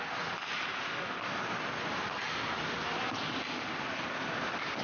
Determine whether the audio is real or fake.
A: real